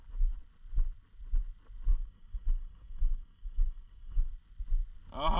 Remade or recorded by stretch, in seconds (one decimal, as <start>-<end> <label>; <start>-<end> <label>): 0.0-1.9 recorded; 1.9-4.3 remade; 4.3-5.4 recorded